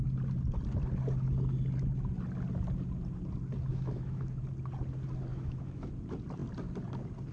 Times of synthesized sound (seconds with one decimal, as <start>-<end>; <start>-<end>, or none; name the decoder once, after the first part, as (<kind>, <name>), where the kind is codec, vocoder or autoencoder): 3.7-4.4 (autoencoder, DAC-VAE); 5.3-5.9